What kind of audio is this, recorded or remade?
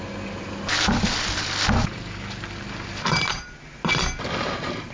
recorded